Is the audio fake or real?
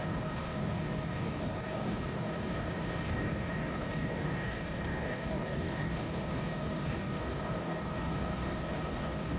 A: fake